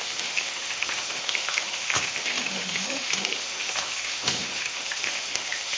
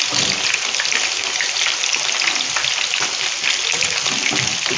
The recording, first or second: second